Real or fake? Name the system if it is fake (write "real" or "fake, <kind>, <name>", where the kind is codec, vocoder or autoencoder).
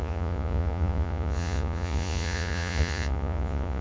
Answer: fake, vocoder, Vocos